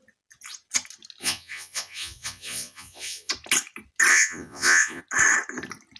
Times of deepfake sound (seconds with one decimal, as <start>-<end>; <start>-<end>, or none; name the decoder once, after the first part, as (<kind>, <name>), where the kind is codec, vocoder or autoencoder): 1.2-3.3 (vocoder, Vocos); 4.1-5.0